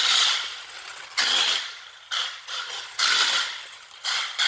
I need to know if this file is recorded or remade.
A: recorded